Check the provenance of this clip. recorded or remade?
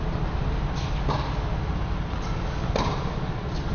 recorded